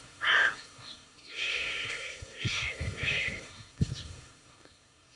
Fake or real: fake